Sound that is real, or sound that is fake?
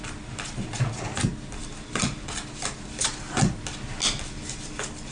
real